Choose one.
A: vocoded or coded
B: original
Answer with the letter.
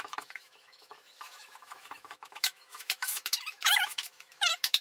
A